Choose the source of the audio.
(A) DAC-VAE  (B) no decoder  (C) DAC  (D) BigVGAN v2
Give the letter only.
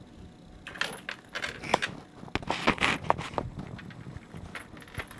B